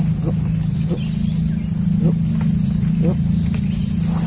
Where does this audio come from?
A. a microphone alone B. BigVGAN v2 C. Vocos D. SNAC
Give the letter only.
A